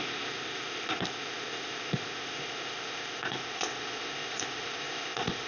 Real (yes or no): no